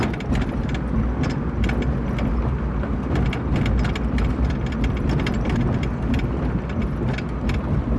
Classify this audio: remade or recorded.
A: recorded